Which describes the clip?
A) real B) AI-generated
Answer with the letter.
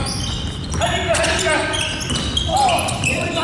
A